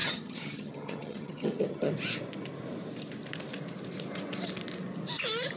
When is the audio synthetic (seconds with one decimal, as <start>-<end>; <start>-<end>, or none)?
0.0-1.9